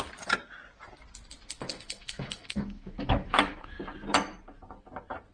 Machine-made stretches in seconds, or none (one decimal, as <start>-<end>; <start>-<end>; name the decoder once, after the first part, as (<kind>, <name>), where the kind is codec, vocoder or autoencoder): 1.7-3.8 (autoencoder, DAC-VAE)